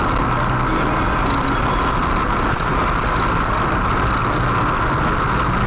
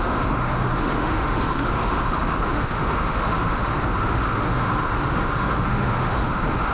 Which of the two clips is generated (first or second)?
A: second